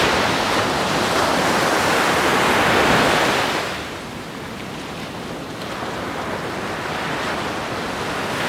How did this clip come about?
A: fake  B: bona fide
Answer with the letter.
B